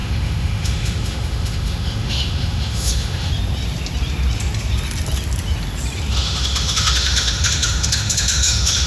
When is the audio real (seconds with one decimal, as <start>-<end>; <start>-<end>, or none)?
3.3-6.1